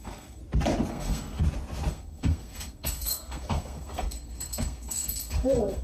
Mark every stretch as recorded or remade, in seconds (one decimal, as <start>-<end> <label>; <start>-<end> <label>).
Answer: 0.0-0.4 remade; 0.4-0.9 recorded; 0.9-1.4 remade; 1.4-1.9 recorded; 1.9-5.8 remade